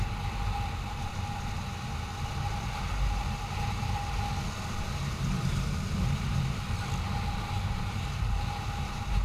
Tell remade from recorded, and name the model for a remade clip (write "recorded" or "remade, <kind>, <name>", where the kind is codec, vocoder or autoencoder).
recorded